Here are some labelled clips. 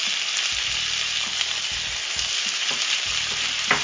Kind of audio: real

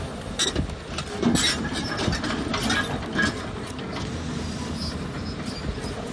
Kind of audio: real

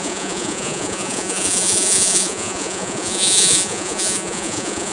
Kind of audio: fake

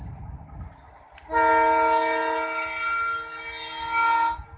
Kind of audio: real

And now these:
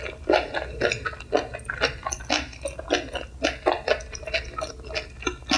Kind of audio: real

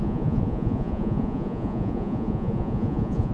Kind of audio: fake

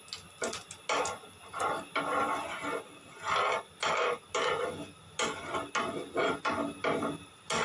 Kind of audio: real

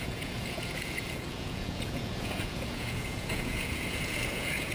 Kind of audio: fake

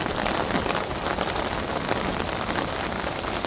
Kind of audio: real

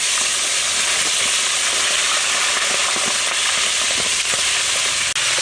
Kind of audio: real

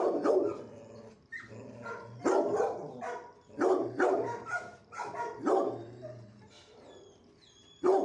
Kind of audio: real